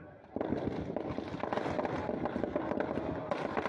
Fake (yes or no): no